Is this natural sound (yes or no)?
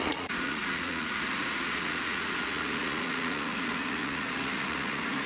no